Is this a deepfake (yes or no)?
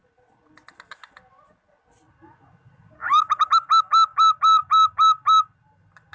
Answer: no